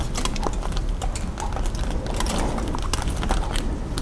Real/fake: real